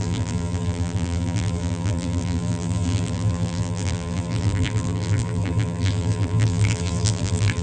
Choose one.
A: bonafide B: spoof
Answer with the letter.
B